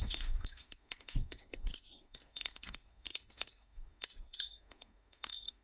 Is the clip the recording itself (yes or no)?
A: no